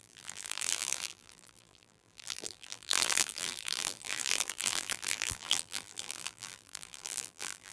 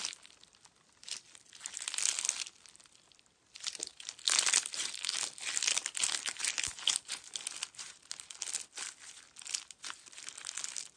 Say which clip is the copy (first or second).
first